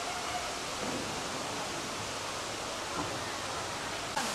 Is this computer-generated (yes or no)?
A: no